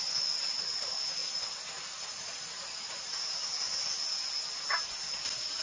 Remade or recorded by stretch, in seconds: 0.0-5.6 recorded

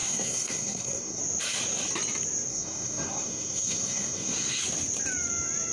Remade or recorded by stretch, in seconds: 0.0-1.2 remade; 1.2-2.5 recorded; 2.5-4.6 remade; 4.6-5.7 recorded

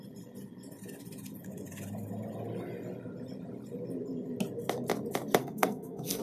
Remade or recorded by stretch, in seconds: 0.0-5.4 recorded; 5.4-6.2 remade

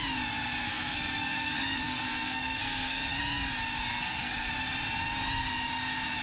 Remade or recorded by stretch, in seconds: 0.0-0.6 recorded; 0.6-3.2 remade; 3.2-3.9 recorded; 3.9-4.5 remade; 4.5-6.2 recorded

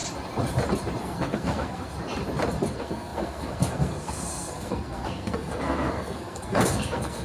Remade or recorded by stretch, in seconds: 0.0-1.0 recorded; 1.0-1.9 remade; 1.9-2.7 recorded; 2.7-7.2 remade